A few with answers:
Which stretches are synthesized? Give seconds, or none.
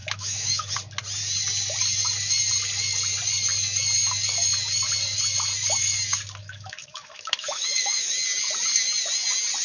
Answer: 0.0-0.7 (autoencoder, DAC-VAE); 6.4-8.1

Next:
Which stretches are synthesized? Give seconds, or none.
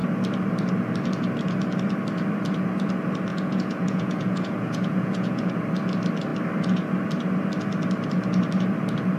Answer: 3.3-5.5 (vocoder, Vocos)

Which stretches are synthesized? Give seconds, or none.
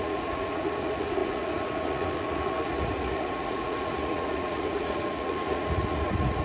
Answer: 0.0-6.4 (vocoder, Vocos)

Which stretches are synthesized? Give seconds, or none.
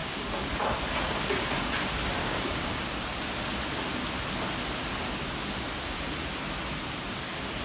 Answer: 0.0-0.5 (codec, DAC); 2.2-2.8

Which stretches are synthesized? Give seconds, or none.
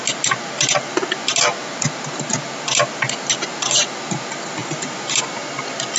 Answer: none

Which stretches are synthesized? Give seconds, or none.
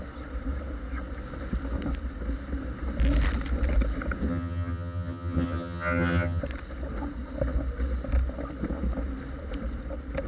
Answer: 4.3-6.4 (vocoder, HiFi-GAN)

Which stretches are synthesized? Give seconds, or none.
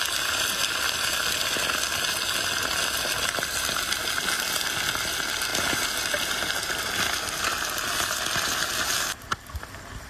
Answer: 5.5-6.8 (vocoder, BigVGAN v2)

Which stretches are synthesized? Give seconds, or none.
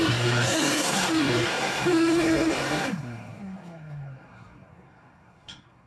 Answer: 0.0-5.9 (codec, SNAC)